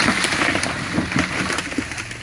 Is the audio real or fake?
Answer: real